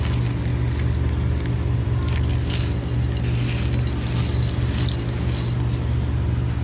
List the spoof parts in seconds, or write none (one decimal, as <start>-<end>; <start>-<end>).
none